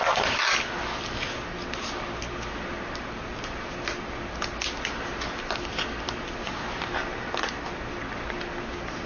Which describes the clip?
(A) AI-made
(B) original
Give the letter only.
B